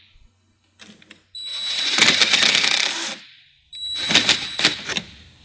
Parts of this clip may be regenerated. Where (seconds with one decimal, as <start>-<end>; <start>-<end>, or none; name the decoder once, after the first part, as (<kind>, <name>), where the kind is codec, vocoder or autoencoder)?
0.0-1.5 (vocoder, BigVGAN v2); 4.7-5.4